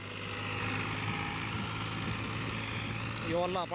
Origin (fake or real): real